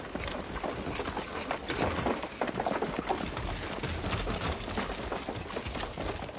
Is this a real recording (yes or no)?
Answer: yes